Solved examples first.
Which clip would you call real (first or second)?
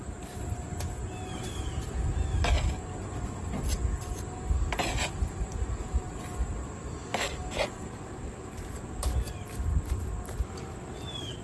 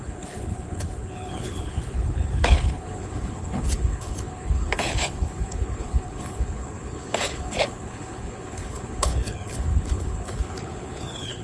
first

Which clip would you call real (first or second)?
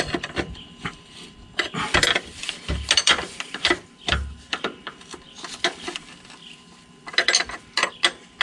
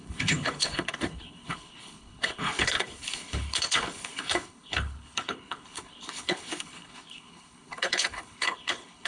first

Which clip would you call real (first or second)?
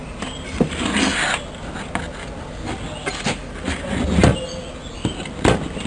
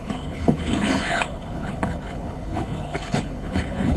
first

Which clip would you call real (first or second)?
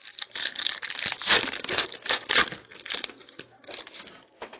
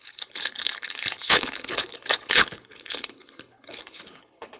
first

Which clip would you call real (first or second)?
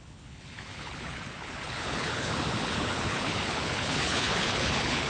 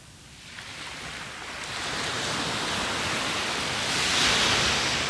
second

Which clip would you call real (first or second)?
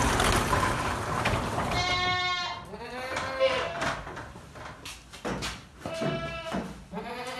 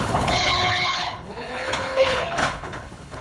first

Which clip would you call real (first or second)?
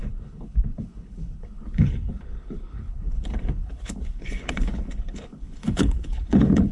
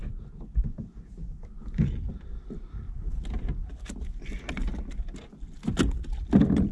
second